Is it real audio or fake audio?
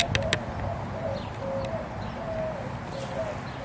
real